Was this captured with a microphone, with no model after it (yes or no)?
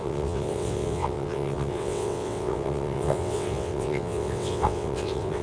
no